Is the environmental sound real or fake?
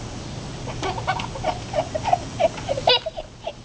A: real